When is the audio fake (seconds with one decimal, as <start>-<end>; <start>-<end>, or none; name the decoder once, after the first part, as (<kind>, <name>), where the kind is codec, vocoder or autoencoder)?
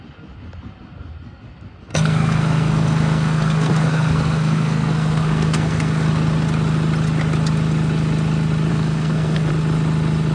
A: 1.9-6.1 (codec, SNAC); 8.7-9.5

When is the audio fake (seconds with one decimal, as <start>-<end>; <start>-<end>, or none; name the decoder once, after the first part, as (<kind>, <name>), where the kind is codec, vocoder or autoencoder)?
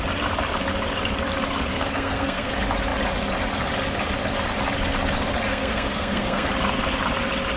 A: 1.7-2.5 (codec, SNAC); 5.5-6.5